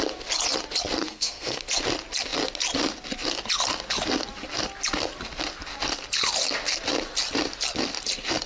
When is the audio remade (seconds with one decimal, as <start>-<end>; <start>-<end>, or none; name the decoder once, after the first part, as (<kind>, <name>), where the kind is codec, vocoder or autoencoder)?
1.0-1.6 (codec, SNAC)